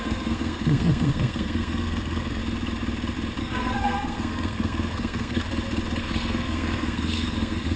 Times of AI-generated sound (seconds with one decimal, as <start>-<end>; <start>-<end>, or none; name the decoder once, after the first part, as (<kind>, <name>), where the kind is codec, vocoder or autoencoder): 0.0-2.4 (codec, SNAC); 3.4-5.4; 6.0-7.8